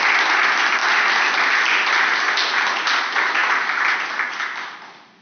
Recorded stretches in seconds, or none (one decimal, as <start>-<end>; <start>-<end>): 0.0-5.2